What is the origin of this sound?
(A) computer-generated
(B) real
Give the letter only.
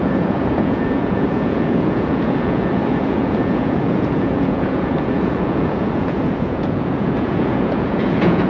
A